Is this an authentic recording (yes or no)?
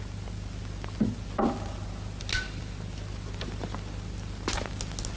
yes